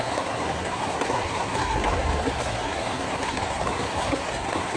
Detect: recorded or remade remade